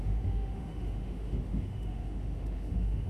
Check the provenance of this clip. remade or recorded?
remade